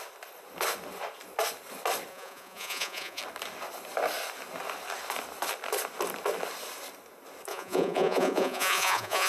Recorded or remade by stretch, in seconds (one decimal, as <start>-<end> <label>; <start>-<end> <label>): 0.0-2.1 recorded; 2.1-3.2 remade; 3.2-7.5 recorded; 7.5-9.3 remade